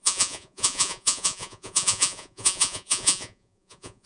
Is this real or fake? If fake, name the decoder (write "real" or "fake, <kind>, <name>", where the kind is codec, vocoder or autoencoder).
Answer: fake, vocoder, Vocos